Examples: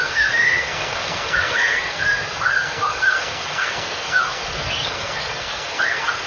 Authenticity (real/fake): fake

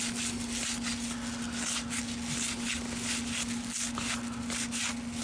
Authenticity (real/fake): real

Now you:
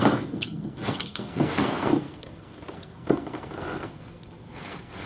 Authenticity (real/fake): fake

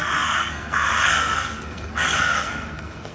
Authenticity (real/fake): fake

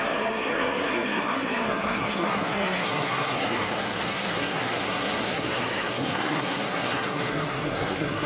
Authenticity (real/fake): fake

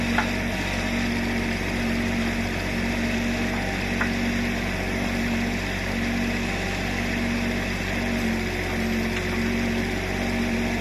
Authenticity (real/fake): real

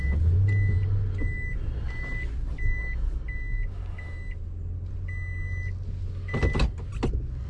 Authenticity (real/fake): real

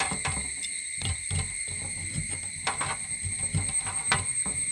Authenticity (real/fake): real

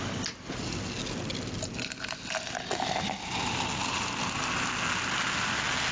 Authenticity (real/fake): real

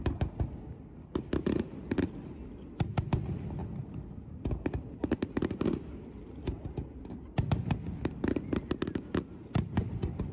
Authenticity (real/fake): real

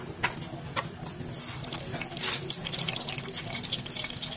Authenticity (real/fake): real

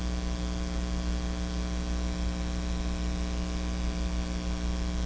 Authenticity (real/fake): real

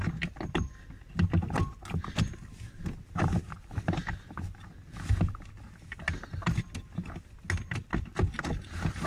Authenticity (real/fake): real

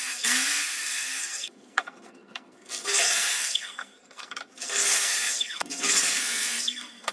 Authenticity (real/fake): fake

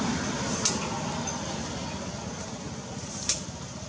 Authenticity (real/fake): real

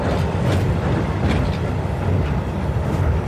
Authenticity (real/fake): real